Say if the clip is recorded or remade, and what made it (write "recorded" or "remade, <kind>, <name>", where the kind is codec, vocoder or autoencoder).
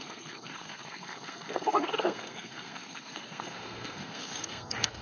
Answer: remade, codec, SNAC